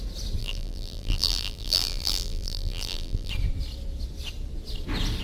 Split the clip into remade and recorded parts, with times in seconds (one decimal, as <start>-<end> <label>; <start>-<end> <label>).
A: 0.0-0.4 recorded; 0.4-3.3 remade; 3.3-5.2 recorded